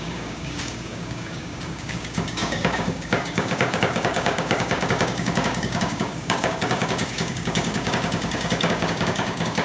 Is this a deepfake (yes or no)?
yes